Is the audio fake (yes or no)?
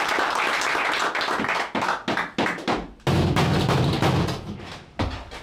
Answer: no